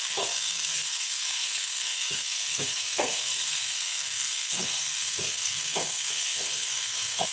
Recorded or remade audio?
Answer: remade